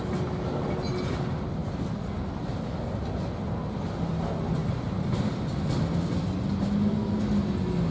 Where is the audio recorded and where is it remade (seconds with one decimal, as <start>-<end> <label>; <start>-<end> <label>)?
0.0-7.9 recorded